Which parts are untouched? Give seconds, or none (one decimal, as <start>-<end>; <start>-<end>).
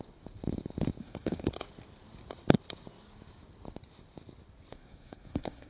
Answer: 0.0-1.0; 1.5-4.7